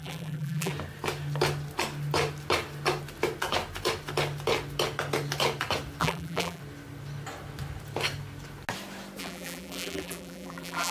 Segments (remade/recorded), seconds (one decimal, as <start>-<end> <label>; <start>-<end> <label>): 0.0-0.7 remade; 0.7-6.0 recorded; 6.0-6.6 remade; 6.6-9.2 recorded; 9.2-10.9 remade